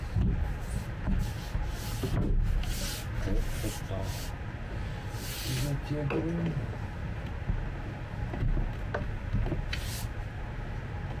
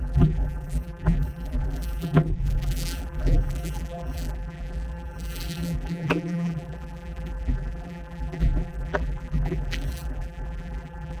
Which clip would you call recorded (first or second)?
first